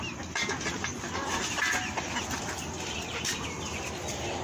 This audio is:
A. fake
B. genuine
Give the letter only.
B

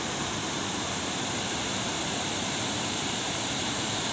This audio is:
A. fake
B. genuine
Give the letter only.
A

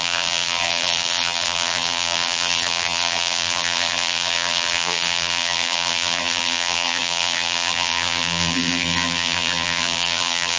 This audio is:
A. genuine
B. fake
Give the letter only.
B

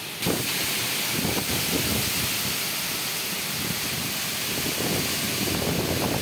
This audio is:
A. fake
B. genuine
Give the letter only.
B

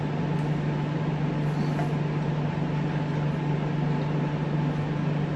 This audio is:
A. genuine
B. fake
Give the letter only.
A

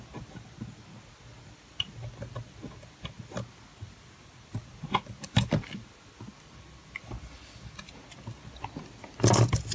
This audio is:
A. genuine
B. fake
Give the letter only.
A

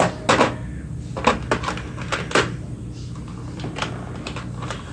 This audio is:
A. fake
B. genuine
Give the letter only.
B